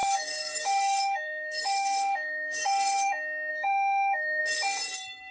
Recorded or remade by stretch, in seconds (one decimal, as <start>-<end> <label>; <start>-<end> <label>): 0.0-3.1 remade; 3.1-3.5 recorded; 3.5-4.4 remade; 4.4-5.3 recorded